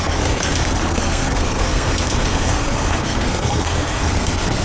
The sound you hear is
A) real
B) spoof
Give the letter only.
B